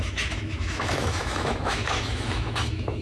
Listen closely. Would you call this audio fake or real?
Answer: fake